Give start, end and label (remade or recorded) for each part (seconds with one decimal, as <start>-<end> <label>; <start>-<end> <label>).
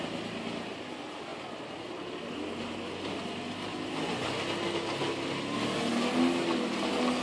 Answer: 0.0-7.2 recorded